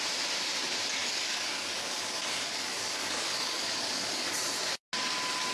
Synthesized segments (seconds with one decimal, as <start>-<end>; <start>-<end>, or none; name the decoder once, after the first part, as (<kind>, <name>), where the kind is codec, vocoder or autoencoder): 1.0-4.3 (codec, DAC)